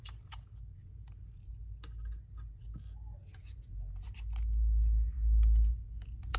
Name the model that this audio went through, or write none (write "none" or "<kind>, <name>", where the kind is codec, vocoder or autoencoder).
none